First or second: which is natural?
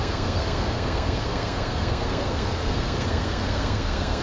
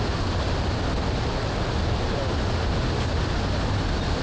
second